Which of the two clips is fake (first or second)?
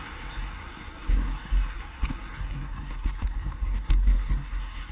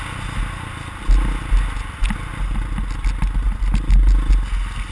first